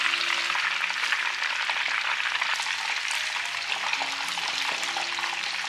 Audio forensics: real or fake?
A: real